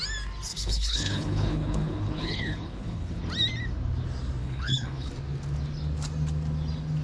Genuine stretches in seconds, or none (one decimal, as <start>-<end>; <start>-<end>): 0.0-0.5; 3.2-4.4; 5.1-7.0